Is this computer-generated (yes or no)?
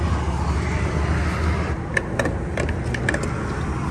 no